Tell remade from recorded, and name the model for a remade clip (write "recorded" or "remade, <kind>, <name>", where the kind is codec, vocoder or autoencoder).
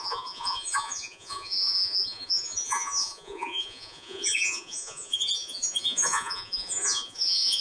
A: remade, vocoder, Vocos